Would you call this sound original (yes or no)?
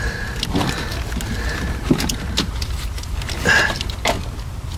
yes